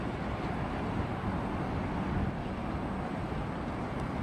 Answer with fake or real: real